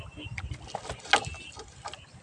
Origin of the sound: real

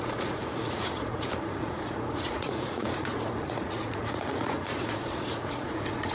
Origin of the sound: fake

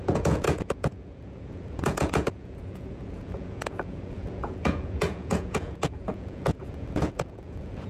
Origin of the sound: fake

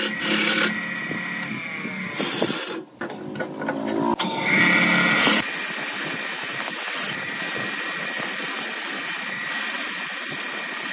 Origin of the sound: real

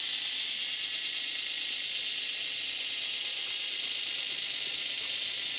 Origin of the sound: real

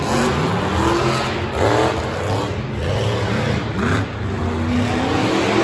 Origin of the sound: real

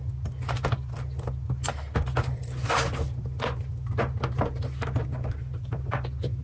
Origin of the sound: real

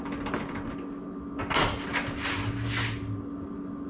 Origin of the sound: real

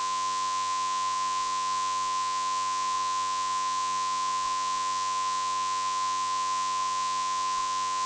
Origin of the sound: fake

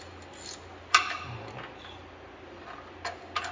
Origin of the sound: real